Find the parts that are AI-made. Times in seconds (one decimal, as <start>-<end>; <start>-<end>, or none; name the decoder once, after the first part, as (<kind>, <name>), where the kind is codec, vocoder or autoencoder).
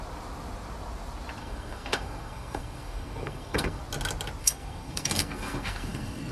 1.4-3.8 (codec, SNAC); 4.4-6.3